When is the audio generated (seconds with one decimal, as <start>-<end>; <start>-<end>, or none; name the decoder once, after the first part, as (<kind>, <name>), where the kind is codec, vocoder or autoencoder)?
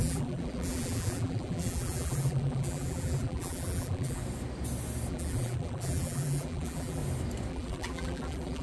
0.0-4.2 (vocoder, BigVGAN v2); 5.1-7.0; 7.5-8.6